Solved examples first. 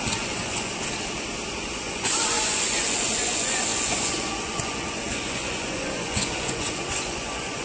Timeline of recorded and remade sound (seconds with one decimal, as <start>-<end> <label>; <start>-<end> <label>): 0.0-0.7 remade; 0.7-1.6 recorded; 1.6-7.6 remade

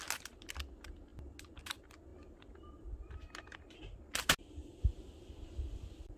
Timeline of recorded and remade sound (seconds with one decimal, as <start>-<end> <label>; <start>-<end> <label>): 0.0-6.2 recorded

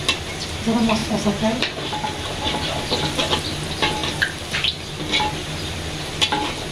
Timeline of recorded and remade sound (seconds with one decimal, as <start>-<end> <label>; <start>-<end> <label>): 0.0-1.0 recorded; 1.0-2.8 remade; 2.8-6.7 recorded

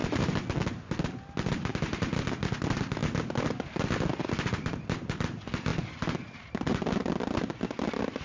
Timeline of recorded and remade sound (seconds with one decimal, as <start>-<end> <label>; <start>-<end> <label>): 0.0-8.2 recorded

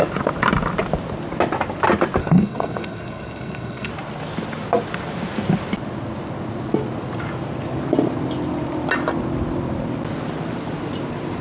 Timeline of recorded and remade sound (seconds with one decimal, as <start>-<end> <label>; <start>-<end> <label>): 0.0-2.2 recorded; 2.2-3.9 remade; 3.9-11.4 recorded

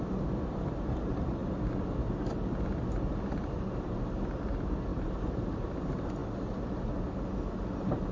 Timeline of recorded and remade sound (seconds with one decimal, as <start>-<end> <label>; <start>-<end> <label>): 0.0-1.4 remade; 1.4-3.1 recorded; 3.1-6.2 remade; 6.2-8.1 recorded